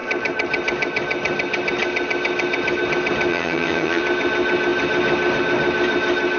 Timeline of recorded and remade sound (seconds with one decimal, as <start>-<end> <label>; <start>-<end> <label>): 0.0-3.3 recorded; 3.3-4.0 remade; 4.0-6.4 recorded